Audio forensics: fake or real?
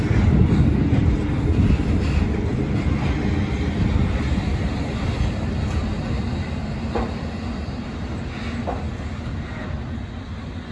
real